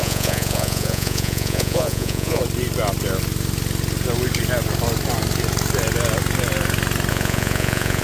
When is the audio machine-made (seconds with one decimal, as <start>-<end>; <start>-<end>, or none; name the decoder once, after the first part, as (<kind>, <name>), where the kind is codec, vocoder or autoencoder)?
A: 0.0-2.4 (vocoder, Vocos); 7.1-8.0